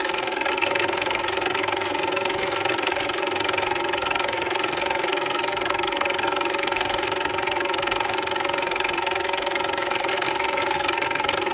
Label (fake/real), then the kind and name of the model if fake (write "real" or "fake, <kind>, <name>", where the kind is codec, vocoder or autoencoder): fake, codec, SNAC